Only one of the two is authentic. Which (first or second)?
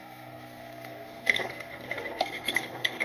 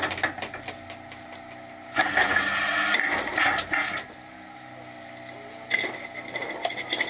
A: second